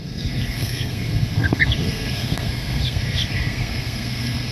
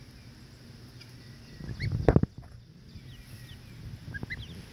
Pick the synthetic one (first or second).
first